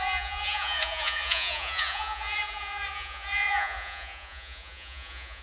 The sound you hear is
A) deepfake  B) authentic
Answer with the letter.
A